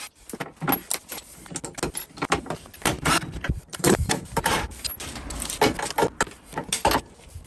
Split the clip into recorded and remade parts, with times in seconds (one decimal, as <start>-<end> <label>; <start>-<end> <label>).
0.0-2.9 recorded; 2.9-4.9 remade; 4.9-7.5 recorded